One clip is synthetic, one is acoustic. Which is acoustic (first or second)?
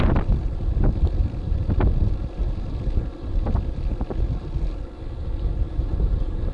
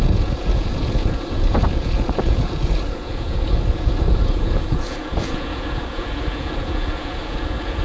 first